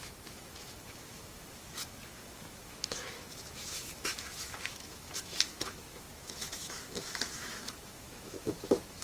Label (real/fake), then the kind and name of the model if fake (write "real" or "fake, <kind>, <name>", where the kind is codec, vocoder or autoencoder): fake, autoencoder, DAC-VAE